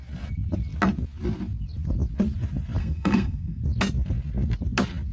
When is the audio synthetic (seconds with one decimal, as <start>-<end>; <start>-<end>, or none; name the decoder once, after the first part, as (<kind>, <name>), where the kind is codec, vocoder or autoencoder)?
2.8-3.6 (codec, SNAC)